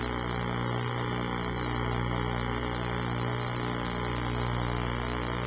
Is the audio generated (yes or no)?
no